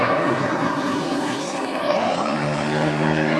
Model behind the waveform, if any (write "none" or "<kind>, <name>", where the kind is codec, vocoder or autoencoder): codec, SNAC